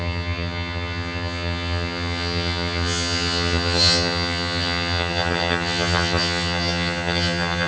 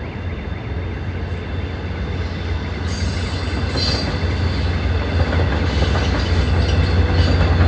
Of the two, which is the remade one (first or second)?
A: first